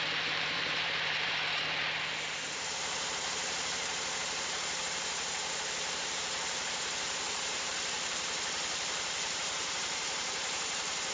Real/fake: fake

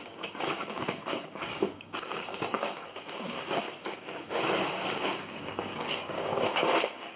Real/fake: fake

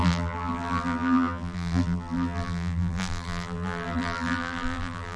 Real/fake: fake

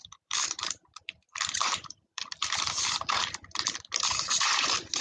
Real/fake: fake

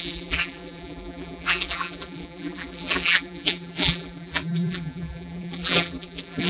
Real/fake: fake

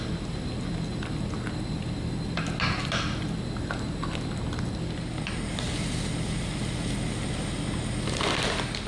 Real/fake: real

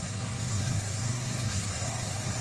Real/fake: fake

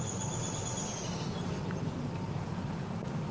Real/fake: real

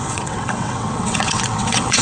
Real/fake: fake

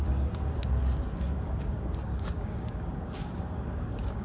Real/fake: fake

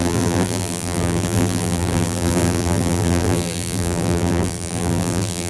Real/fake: fake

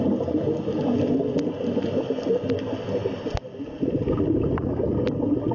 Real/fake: real